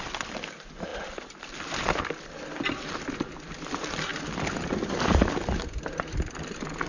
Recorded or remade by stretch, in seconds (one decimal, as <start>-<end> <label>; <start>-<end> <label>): 0.0-6.9 recorded